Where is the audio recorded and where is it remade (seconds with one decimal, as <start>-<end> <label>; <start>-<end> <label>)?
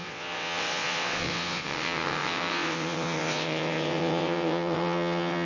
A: 0.0-5.5 remade